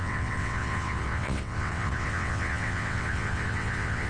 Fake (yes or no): yes